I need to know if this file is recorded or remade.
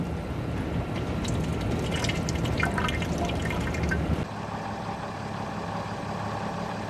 recorded